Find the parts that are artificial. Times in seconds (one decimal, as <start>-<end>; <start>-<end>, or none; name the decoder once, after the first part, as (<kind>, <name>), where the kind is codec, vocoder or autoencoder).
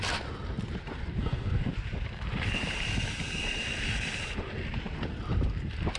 1.2-1.7 (codec, SNAC)